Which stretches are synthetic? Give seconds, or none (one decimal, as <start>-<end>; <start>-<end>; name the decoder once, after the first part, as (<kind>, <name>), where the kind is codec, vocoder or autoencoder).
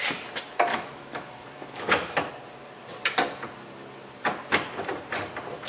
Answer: 0.7-2.3 (autoencoder, DAC-VAE)